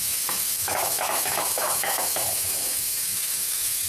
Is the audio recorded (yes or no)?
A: no